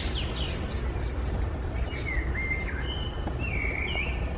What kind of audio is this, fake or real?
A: real